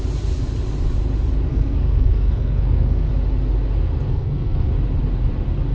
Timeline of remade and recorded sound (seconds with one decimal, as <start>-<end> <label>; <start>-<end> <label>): 0.0-1.5 recorded; 1.5-3.1 remade; 3.1-4.1 recorded; 4.1-4.7 remade; 4.7-5.7 recorded